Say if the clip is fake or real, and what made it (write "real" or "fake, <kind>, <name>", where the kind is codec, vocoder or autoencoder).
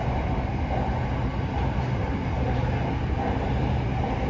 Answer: real